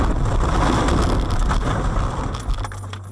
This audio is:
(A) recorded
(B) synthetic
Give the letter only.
A